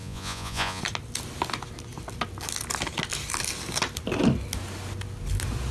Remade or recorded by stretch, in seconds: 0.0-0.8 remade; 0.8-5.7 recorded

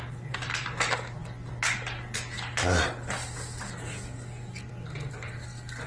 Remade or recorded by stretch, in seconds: 0.0-5.9 recorded

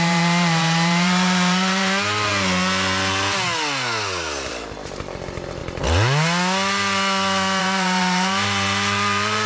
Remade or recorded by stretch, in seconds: 0.0-2.3 remade; 2.3-4.5 recorded; 4.5-5.6 remade; 5.6-7.6 recorded; 7.6-9.5 remade

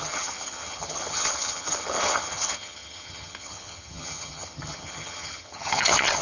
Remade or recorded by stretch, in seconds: 0.0-6.2 remade

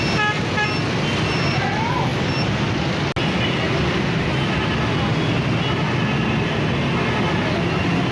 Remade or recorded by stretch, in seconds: 0.0-8.1 recorded

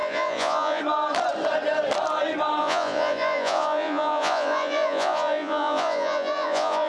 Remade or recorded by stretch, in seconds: 0.0-0.8 remade; 0.8-2.6 recorded; 2.6-6.9 remade